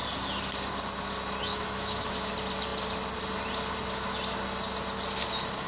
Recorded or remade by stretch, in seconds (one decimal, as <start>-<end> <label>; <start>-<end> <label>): 0.0-1.5 recorded; 1.5-2.3 remade; 2.3-5.7 recorded